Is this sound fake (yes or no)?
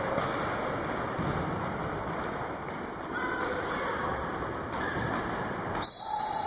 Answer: no